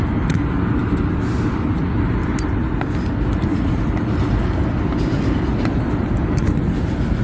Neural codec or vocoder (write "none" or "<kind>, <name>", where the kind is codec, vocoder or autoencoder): none